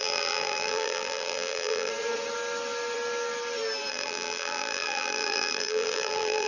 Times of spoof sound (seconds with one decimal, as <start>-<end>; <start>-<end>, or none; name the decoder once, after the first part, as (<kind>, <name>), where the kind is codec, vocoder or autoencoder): 0.0-1.9 (vocoder, BigVGAN v2); 3.9-6.5